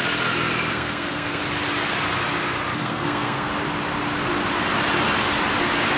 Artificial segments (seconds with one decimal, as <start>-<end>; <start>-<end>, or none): 0.7-1.4; 2.8-3.5